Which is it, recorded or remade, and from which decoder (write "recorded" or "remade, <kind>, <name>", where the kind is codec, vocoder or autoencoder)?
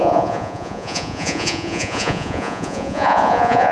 remade, vocoder, Vocos